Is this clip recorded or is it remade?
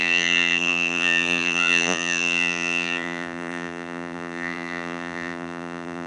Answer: remade